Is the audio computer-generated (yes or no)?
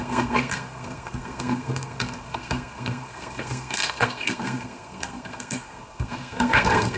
yes